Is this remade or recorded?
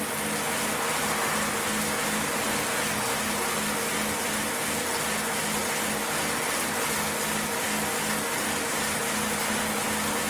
recorded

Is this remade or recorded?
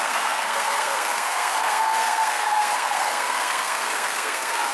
remade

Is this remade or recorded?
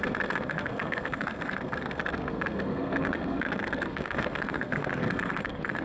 remade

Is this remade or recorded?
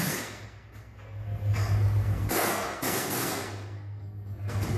remade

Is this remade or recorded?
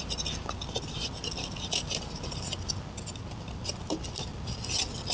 recorded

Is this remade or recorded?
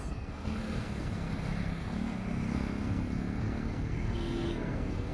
remade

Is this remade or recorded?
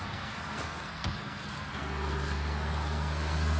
remade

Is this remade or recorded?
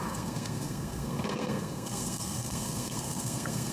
remade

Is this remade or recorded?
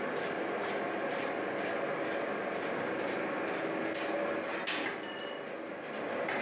recorded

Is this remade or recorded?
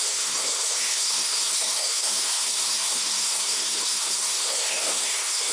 remade